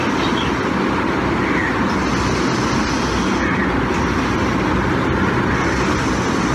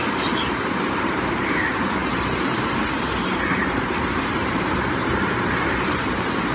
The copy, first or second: second